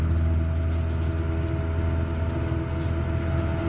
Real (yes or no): yes